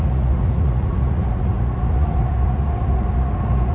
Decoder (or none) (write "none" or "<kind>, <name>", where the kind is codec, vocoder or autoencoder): vocoder, Vocos